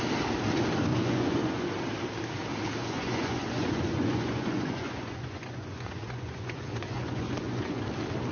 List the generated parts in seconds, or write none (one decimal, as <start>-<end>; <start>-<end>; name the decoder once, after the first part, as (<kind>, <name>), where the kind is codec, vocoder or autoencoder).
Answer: 0.9-1.7 (vocoder, Vocos); 2.8-7.8